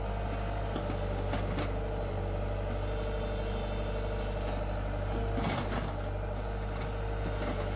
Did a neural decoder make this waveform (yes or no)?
no